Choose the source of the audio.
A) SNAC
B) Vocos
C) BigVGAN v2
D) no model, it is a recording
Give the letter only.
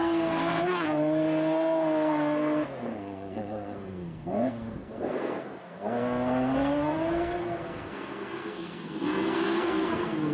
A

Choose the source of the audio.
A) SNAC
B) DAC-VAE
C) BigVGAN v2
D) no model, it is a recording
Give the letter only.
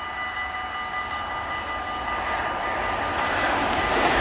D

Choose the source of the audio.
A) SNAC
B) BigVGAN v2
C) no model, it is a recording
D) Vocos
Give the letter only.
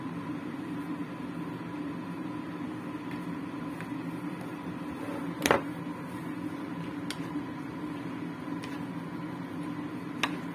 C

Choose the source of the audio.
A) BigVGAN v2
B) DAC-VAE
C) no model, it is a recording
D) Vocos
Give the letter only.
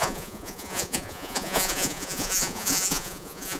D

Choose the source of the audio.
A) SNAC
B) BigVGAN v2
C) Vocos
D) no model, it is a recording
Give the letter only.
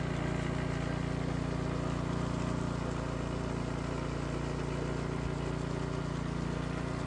D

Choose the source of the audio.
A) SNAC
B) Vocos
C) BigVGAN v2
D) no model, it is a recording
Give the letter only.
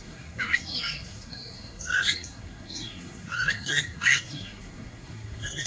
A